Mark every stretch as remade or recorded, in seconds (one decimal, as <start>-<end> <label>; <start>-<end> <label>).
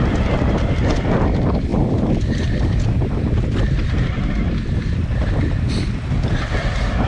0.0-7.1 remade